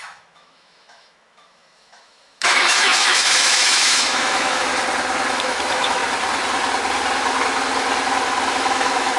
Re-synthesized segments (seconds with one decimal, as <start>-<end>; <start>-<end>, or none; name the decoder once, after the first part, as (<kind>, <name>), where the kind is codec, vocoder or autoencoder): 0.0-4.7 (autoencoder, DAC-VAE); 5.3-6.0; 8.5-9.2